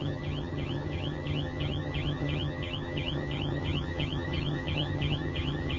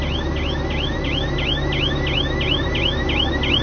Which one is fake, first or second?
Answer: first